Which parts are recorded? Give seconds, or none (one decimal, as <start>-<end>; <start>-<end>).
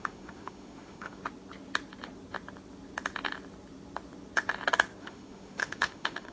1.2-5.0